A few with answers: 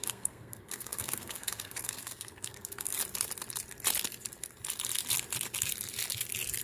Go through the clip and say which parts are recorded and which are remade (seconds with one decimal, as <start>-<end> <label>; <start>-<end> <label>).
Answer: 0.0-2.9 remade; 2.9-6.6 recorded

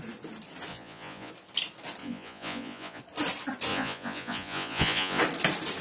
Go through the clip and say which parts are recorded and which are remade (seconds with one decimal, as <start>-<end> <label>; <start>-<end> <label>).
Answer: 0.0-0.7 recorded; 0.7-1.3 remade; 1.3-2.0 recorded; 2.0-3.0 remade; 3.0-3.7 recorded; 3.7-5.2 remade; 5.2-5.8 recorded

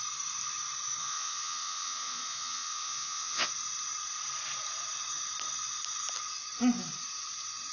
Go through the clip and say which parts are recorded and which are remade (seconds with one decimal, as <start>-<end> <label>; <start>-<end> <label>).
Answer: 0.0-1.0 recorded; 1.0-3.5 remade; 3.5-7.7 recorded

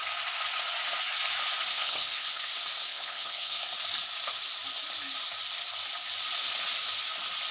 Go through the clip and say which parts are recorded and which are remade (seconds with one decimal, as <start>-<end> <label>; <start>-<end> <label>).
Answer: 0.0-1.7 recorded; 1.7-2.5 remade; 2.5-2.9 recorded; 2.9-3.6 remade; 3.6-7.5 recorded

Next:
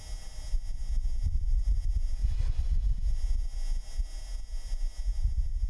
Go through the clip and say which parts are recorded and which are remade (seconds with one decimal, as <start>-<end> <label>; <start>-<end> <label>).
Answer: 0.0-5.7 recorded